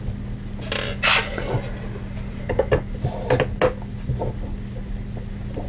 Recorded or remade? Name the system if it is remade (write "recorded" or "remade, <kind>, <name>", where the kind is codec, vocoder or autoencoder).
recorded